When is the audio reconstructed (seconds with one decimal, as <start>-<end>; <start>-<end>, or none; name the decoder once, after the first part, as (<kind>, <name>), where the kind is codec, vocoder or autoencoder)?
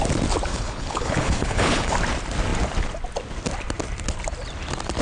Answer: 0.5-1.9 (codec, HILCodec)